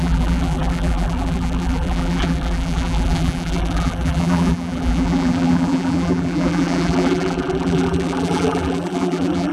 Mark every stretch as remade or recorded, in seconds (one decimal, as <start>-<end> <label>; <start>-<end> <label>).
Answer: 0.0-9.5 remade